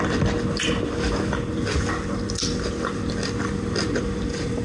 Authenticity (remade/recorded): recorded